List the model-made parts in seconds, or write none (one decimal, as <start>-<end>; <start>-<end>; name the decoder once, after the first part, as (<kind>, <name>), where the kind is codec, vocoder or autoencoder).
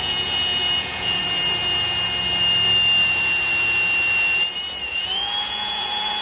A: 0.0-1.2 (vocoder, Vocos); 4.9-6.2